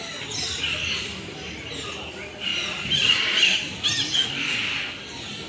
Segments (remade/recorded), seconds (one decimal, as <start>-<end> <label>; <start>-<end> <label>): 0.0-2.5 remade; 2.5-4.3 recorded; 4.3-5.5 remade